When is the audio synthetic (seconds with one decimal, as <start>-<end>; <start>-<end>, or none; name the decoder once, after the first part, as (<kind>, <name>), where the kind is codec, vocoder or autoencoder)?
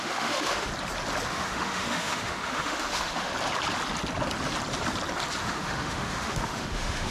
0.0-0.7 (autoencoder, DAC-VAE); 1.3-3.3; 5.4-7.1